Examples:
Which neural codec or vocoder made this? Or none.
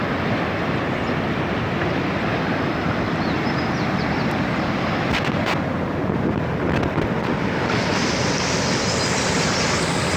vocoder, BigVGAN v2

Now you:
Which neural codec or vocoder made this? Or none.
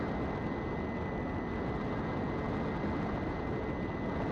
none